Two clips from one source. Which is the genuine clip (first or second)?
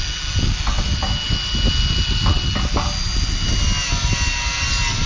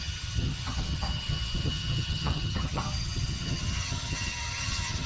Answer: first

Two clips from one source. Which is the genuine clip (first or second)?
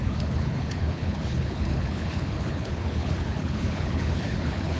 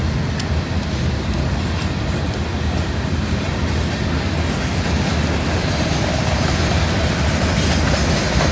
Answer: second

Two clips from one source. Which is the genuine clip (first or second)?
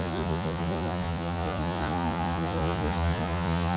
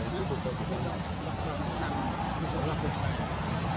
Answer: second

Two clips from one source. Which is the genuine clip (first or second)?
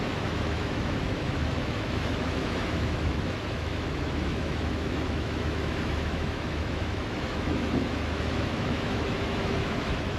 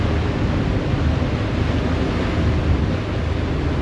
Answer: second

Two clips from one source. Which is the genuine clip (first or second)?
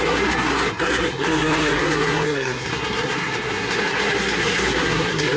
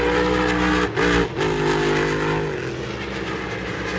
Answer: second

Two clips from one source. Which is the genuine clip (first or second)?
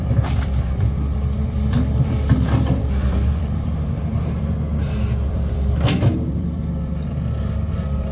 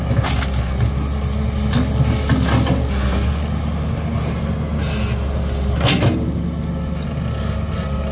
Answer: second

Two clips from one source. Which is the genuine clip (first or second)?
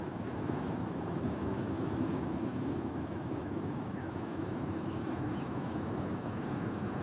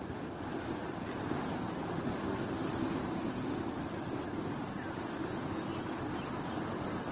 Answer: second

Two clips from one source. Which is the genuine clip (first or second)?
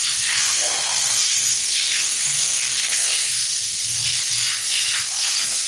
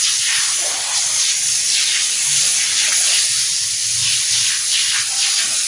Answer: second